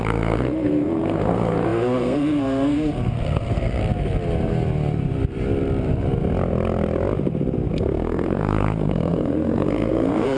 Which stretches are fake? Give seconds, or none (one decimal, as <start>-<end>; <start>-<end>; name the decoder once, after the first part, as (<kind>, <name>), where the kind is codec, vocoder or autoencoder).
0.0-3.8 (codec, SNAC); 7.7-10.4